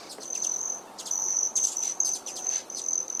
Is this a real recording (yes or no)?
yes